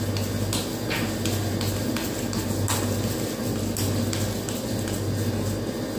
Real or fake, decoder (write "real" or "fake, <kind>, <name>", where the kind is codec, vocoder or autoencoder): real